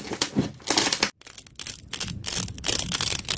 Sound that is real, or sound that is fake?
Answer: real